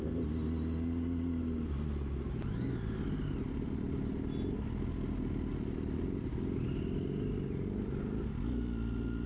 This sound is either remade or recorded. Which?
recorded